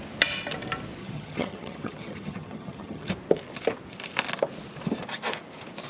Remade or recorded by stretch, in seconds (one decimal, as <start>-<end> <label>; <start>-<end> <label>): 0.0-1.0 recorded; 1.0-3.1 remade; 3.1-5.9 recorded